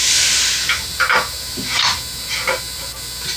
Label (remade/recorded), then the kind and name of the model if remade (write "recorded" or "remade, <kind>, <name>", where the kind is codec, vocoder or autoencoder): recorded